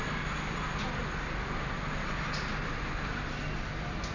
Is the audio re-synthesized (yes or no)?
no